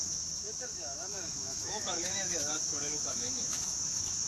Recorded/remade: remade